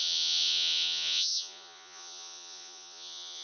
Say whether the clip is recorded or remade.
remade